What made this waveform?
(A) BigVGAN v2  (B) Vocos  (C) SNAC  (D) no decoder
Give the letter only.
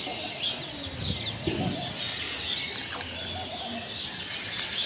D